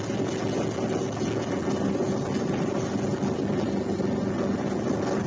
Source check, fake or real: real